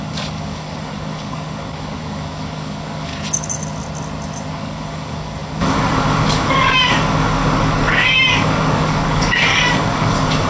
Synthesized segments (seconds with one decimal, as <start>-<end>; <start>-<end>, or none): 0.0-3.1; 4.5-10.5